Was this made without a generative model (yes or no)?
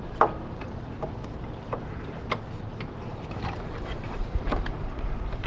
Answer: no